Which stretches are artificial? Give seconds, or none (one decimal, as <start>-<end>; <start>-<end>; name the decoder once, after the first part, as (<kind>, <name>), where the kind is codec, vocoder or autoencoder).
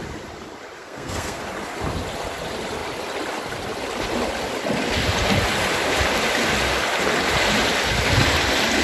0.8-1.4 (codec, SNAC)